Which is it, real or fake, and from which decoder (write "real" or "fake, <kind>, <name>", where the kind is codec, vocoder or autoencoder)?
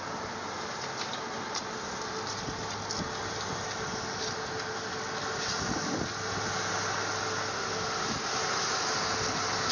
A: real